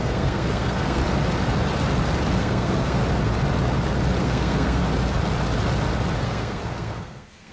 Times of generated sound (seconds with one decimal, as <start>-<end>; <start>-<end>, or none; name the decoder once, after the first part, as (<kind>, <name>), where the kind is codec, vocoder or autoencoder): 0.0-1.0 (codec, SNAC); 2.4-3.0; 4.2-4.8; 6.2-7.5